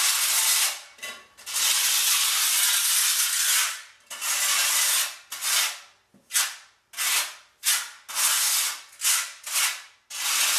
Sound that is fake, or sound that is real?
real